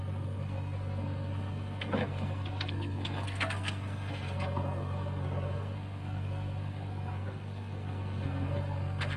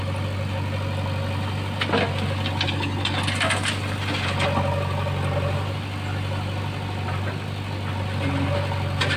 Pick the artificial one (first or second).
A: first